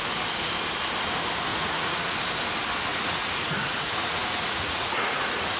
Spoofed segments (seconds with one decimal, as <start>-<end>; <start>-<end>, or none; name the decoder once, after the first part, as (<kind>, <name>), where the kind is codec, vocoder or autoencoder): 1.5-2.1 (vocoder, Vocos); 2.9-5.6